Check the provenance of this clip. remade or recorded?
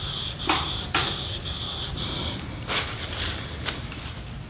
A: recorded